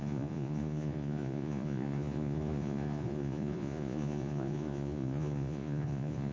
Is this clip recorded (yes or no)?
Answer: no